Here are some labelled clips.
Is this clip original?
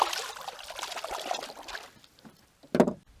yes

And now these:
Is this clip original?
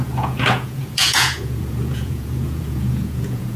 no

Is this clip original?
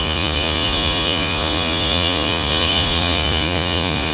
no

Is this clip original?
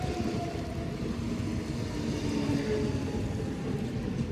yes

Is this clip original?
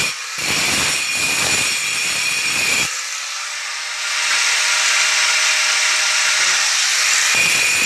yes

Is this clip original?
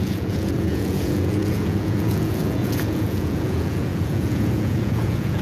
no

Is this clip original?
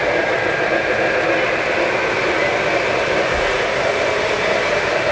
yes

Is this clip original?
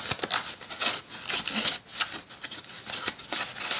yes